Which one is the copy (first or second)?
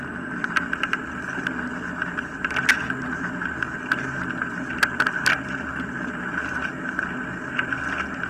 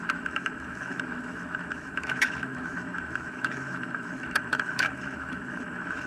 second